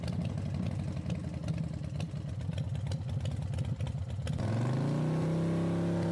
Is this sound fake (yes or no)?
no